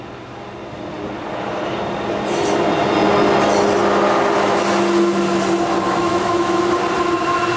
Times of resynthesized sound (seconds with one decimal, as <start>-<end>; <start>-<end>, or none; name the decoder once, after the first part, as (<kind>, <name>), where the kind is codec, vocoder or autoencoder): 6.0-6.6 (autoencoder, DAC-VAE)